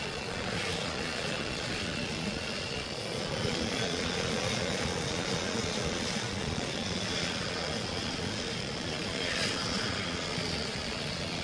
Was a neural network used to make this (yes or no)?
yes